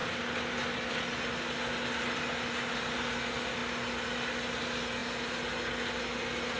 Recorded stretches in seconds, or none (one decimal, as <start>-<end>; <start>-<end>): 0.0-6.6